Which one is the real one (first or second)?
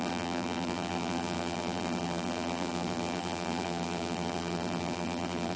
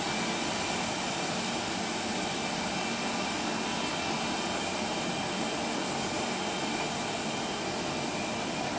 second